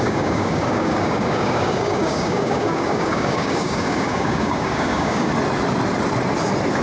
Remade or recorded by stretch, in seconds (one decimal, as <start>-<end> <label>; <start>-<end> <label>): 0.0-5.3 remade; 5.3-6.8 recorded